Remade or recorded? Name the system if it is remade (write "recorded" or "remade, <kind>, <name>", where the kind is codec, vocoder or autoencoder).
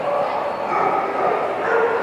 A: remade, vocoder, BigVGAN v2